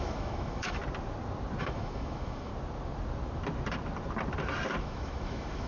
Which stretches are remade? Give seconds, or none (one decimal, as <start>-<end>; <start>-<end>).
0.0-0.8; 1.6-2.5; 4.8-5.7